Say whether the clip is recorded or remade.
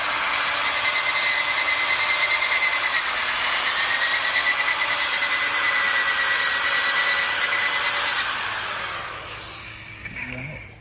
remade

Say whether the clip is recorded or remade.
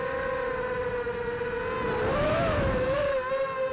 recorded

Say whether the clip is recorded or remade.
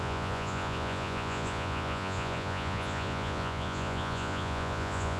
remade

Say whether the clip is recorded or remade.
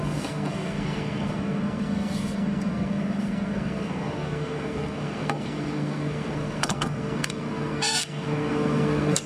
remade